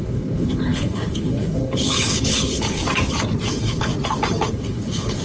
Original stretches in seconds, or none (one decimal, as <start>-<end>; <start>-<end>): 2.8-3.5; 3.9-4.5